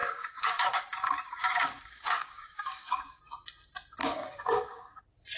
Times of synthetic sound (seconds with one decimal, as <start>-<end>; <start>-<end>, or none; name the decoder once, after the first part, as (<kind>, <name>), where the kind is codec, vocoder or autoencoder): 0.0-3.2 (codec, DAC); 4.0-5.0